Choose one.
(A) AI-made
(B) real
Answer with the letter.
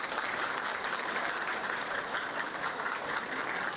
A